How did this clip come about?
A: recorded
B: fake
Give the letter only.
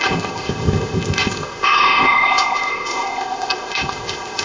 B